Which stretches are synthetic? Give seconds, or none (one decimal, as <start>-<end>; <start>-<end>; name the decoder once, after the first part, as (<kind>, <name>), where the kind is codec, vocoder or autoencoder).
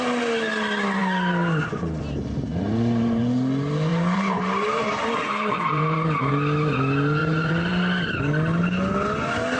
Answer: 2.5-3.2 (vocoder, BigVGAN v2); 3.9-6.3; 7.2-7.7